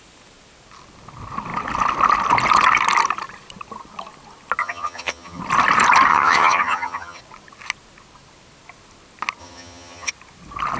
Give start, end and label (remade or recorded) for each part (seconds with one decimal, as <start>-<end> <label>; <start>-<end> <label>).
0.0-4.6 recorded; 4.6-5.4 remade; 5.4-6.1 recorded; 6.1-7.2 remade; 7.2-9.4 recorded; 9.4-10.1 remade; 10.1-10.8 recorded